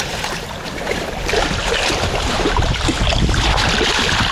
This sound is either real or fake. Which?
fake